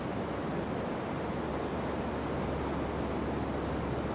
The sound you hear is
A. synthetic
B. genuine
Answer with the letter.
B